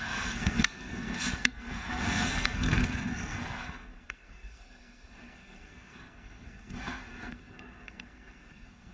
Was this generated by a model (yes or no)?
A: yes